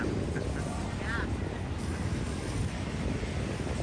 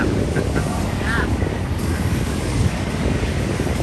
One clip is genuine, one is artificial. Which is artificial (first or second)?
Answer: second